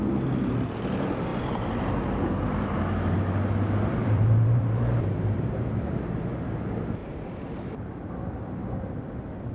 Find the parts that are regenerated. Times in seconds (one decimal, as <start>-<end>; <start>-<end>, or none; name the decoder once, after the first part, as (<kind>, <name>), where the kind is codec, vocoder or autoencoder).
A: 1.3-2.0 (vocoder, BigVGAN v2); 4.0-6.2; 7.0-8.1